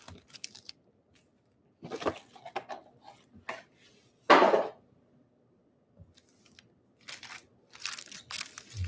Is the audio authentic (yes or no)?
yes